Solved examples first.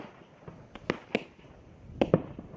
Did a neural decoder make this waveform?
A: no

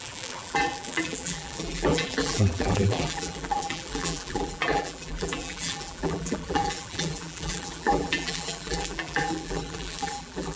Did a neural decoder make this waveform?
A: yes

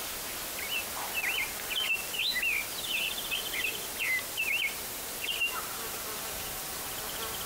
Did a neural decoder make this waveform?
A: no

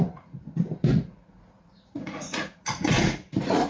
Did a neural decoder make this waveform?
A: yes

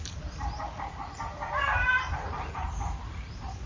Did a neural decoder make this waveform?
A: yes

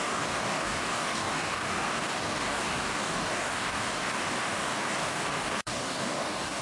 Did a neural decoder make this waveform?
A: yes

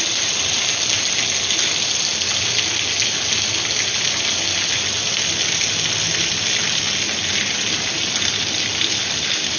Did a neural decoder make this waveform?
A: no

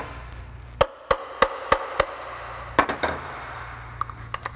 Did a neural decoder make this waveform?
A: no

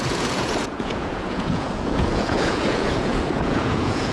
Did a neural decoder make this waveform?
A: yes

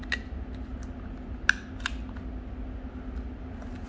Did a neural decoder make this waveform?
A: no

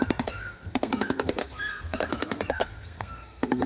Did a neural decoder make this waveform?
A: yes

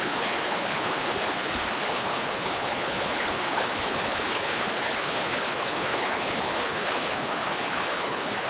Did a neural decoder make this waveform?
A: yes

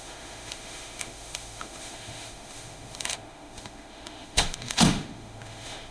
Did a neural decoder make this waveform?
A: yes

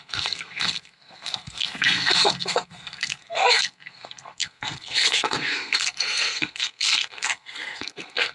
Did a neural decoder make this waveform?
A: yes